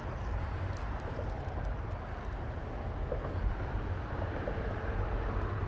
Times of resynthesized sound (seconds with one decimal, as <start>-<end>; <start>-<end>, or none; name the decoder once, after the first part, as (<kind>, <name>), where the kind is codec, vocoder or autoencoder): none